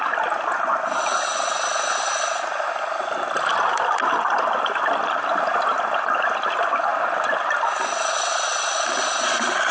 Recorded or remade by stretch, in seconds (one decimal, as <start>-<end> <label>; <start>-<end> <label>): 0.0-9.7 recorded